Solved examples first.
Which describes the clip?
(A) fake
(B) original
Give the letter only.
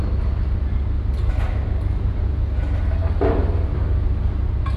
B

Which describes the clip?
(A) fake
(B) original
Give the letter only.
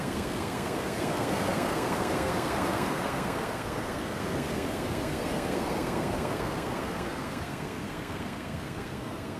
A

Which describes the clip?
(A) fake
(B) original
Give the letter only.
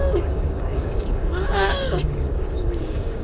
A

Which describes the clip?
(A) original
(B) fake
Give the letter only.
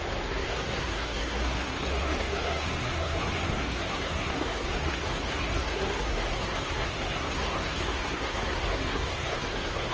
B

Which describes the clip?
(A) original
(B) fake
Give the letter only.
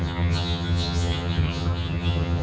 B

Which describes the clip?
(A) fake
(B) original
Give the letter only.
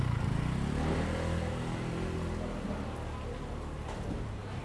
B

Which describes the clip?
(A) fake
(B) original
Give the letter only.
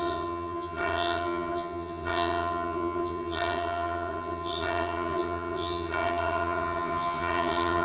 A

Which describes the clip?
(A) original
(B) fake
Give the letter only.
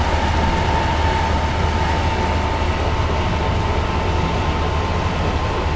A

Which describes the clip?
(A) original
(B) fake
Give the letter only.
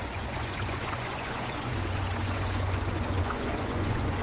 B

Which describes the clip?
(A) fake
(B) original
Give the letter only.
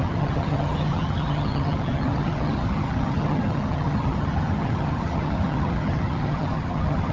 A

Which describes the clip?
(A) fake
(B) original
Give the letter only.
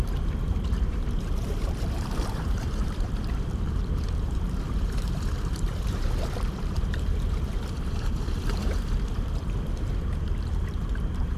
A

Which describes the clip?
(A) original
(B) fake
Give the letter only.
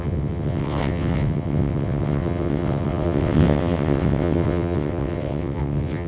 B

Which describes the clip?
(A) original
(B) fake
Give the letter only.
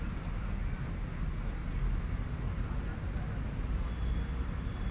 A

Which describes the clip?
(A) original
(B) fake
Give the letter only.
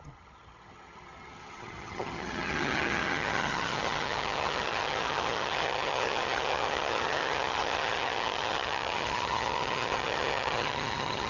B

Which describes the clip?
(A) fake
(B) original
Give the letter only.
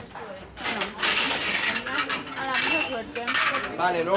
B